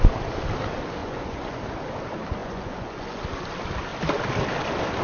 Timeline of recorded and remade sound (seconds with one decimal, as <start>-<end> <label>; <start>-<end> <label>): 0.0-1.0 recorded; 1.0-1.6 remade; 1.6-2.4 recorded; 2.4-3.2 remade; 3.2-5.0 recorded